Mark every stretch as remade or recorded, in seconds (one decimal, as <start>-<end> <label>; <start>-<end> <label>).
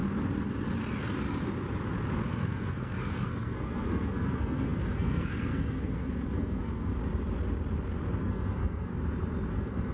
0.0-2.3 recorded; 2.3-6.9 remade; 6.9-8.2 recorded; 8.2-8.9 remade; 8.9-9.5 recorded; 9.5-9.9 remade